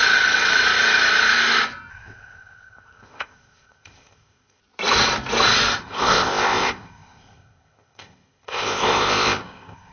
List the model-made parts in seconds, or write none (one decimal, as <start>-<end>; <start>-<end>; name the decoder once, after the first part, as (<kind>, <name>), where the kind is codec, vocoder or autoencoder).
1.9-4.6 (codec, ZipCodec); 5.8-9.9